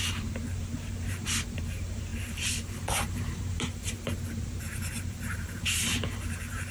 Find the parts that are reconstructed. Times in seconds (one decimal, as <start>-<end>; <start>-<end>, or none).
0.0-6.7